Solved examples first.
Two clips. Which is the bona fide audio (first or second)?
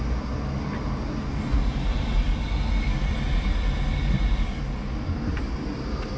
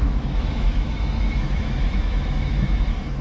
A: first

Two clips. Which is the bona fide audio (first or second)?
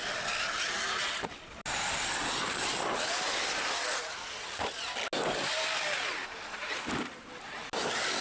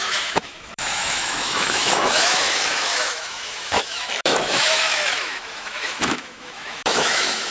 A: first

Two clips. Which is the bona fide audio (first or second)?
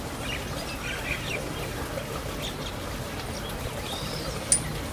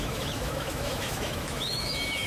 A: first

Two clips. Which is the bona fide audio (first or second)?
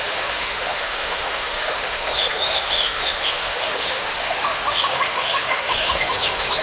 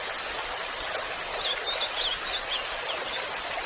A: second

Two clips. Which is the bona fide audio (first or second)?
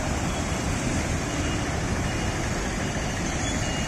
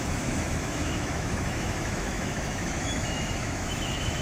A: first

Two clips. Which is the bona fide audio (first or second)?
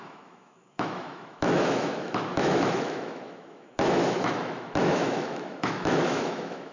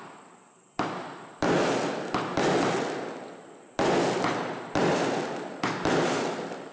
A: second